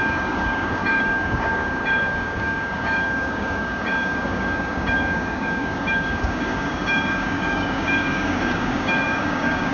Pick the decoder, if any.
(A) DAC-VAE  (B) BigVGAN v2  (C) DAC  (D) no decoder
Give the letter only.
C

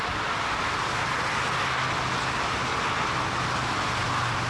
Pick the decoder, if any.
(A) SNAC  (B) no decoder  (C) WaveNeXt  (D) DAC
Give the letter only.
B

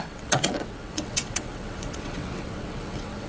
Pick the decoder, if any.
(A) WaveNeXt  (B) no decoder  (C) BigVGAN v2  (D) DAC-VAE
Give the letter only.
A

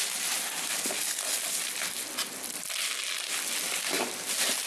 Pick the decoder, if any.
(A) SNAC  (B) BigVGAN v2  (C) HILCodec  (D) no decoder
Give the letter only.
D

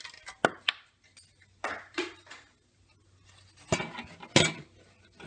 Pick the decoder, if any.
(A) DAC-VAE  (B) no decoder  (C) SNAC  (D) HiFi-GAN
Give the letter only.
B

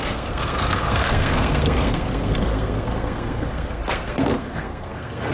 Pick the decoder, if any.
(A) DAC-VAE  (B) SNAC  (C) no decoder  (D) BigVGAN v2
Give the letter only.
B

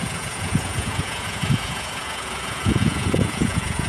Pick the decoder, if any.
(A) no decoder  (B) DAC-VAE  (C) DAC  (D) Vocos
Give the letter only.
D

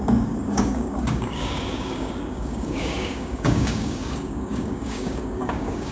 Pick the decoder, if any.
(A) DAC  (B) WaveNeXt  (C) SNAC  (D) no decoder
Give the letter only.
A